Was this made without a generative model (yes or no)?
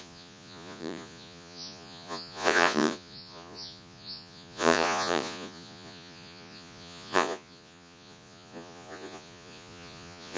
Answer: no